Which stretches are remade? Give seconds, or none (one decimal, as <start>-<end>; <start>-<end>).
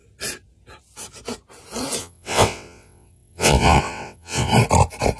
2.0-4.5